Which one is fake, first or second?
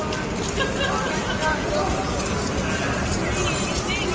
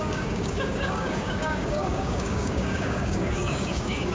second